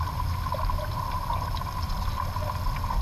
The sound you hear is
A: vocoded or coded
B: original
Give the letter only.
B